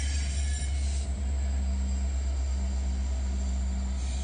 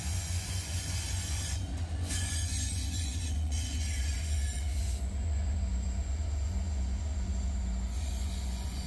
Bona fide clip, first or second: first